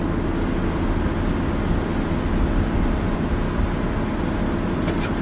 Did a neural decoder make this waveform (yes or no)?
no